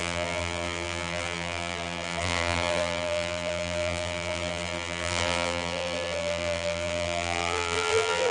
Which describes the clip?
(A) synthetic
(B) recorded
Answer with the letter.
A